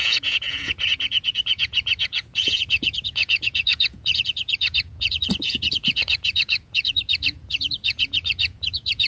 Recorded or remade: remade